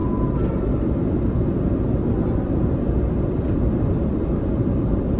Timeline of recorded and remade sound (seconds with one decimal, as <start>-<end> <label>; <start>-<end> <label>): 0.0-5.2 recorded

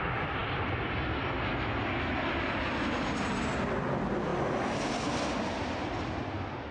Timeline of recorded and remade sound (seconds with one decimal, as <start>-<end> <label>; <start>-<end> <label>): 0.0-0.4 recorded; 0.4-1.2 remade; 1.2-6.7 recorded

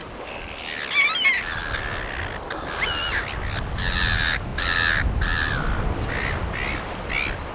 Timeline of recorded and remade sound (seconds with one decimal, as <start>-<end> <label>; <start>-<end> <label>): 0.0-7.5 recorded

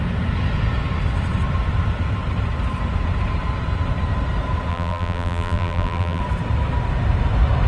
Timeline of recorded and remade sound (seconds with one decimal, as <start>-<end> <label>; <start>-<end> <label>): 0.0-4.7 recorded; 4.7-6.2 remade; 6.2-7.7 recorded

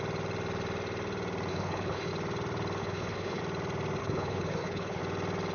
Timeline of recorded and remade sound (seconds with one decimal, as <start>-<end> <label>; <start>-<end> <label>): 0.0-1.5 recorded; 1.5-2.1 remade; 2.1-2.8 recorded; 2.8-3.4 remade; 3.4-4.0 recorded; 4.0-5.0 remade; 5.0-5.5 recorded

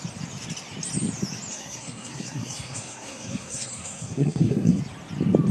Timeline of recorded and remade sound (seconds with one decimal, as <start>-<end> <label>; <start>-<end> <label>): 0.0-1.5 recorded; 1.5-4.8 remade; 4.8-5.5 recorded

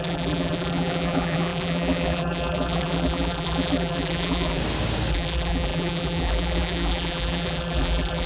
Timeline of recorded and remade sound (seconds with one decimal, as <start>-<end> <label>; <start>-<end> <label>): 0.0-4.6 remade; 4.6-5.1 recorded; 5.1-8.3 remade